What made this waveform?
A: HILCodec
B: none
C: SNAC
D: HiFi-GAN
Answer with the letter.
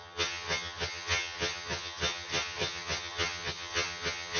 D